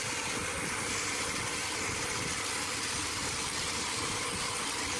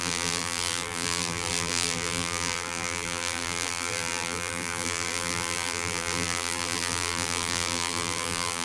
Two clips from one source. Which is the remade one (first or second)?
second